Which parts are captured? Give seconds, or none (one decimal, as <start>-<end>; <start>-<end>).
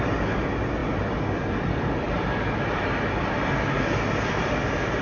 0.0-5.0